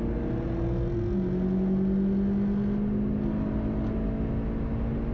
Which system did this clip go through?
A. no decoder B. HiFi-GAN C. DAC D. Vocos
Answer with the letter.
A